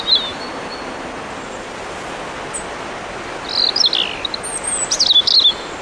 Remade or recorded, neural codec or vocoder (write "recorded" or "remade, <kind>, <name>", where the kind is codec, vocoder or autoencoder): recorded